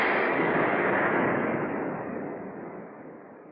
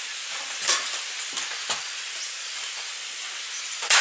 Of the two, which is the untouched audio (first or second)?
second